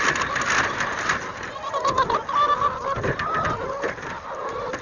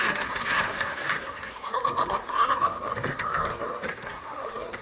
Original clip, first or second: first